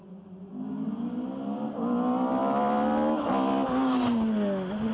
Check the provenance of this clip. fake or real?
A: real